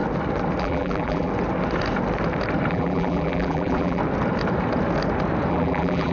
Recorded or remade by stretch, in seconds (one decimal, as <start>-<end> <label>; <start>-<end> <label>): 0.0-0.6 recorded; 0.6-1.3 remade; 1.3-2.7 recorded; 2.7-4.0 remade; 4.0-5.5 recorded; 5.5-6.1 remade